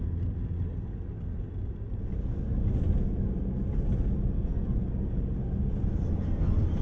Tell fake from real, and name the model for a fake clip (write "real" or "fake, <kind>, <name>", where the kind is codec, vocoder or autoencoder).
real